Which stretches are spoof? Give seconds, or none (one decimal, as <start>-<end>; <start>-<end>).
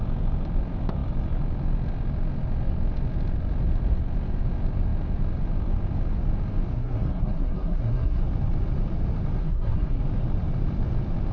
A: 6.7-8.2; 9.4-10.0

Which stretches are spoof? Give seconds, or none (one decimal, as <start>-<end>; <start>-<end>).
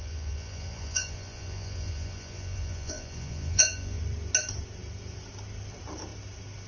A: 0.0-4.0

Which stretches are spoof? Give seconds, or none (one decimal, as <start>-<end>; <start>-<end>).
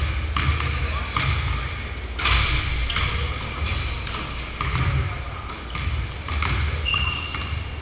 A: none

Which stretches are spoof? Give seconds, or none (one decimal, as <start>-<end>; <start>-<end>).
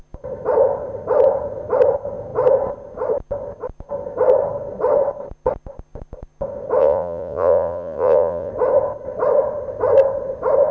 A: 6.8-8.5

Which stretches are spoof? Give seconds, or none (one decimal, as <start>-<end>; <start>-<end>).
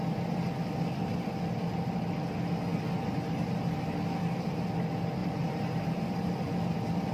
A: 5.2-6.3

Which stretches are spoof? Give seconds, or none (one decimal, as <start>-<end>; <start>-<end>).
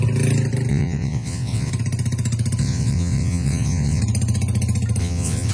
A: 0.7-1.7; 2.6-4.0; 5.0-5.5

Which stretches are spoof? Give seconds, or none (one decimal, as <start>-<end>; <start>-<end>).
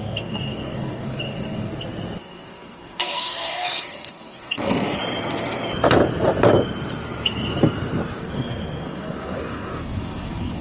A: 0.0-1.7; 2.2-5.0; 8.2-10.6